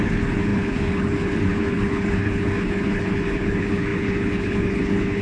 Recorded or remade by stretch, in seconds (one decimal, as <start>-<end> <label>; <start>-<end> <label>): 0.0-5.2 remade